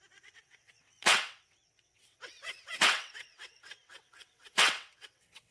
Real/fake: fake